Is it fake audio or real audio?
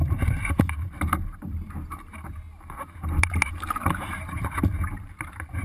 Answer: fake